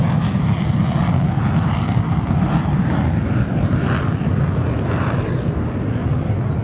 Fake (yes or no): no